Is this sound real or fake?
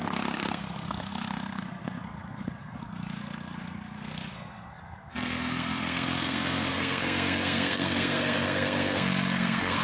fake